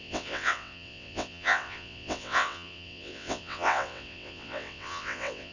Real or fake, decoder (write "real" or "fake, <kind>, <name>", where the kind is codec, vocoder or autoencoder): fake, vocoder, WaveNeXt